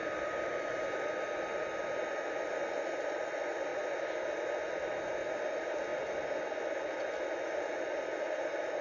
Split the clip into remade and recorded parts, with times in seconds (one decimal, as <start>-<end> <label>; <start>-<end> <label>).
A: 0.0-8.8 recorded